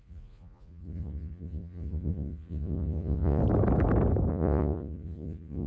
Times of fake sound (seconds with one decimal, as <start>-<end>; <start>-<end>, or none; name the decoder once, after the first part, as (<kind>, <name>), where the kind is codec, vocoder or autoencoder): 0.0-3.4 (vocoder, Vocos); 4.3-5.7